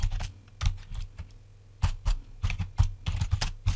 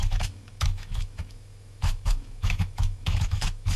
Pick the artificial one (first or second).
second